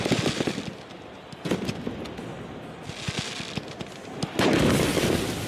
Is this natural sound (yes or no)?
yes